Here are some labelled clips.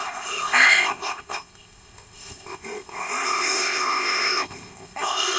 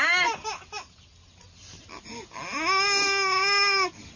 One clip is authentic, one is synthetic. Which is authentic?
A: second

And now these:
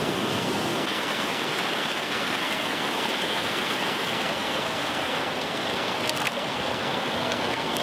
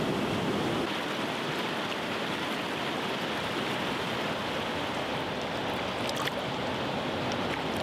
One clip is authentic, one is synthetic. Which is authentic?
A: second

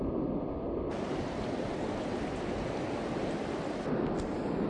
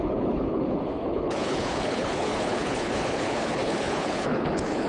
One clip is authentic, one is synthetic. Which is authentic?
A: first